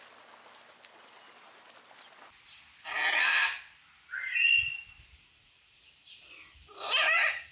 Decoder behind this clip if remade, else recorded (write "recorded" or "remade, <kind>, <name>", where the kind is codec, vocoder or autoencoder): recorded